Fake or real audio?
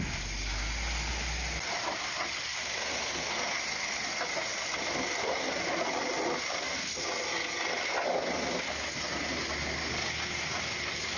real